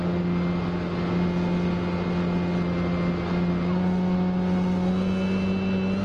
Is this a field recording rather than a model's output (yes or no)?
yes